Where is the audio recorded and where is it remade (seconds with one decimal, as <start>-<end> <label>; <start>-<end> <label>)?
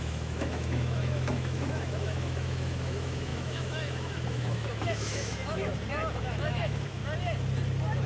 0.0-5.7 remade; 5.7-6.2 recorded; 6.2-7.0 remade; 7.0-8.1 recorded